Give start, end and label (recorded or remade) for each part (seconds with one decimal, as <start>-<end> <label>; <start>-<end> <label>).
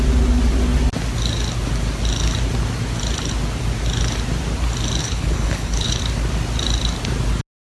0.0-5.0 recorded; 5.0-6.0 remade; 6.0-7.6 recorded